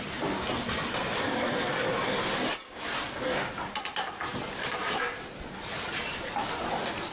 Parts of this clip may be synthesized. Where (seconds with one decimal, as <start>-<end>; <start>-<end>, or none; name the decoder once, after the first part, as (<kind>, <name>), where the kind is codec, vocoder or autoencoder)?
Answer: 0.0-0.8 (vocoder, BigVGAN v2); 3.9-7.1